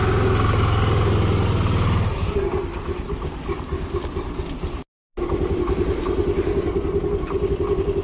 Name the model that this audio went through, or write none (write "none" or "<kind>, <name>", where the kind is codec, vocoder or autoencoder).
none